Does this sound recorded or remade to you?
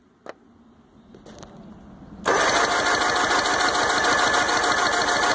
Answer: recorded